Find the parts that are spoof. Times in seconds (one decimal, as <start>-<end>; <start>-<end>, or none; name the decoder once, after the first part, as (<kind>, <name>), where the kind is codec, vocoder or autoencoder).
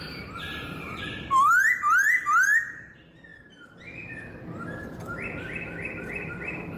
0.5-1.3 (vocoder, BigVGAN v2)